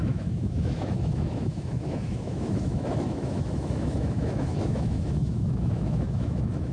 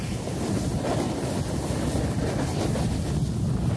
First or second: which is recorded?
second